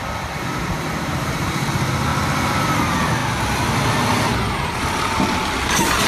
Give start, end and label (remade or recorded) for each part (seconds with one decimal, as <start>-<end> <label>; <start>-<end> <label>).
0.0-2.1 remade; 2.1-2.8 recorded; 2.8-3.2 remade; 3.2-5.6 recorded; 5.6-6.1 remade